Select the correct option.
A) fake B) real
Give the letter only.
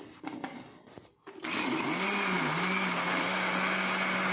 B